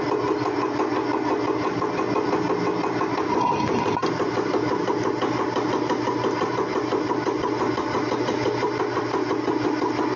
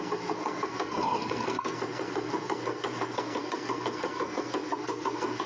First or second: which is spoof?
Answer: second